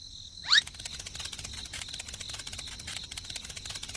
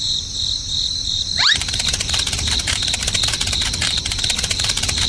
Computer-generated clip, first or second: second